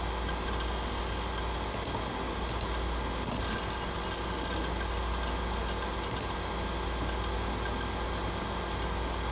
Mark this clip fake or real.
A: real